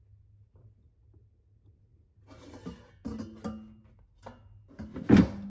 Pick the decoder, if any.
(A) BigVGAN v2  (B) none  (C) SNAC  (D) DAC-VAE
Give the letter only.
B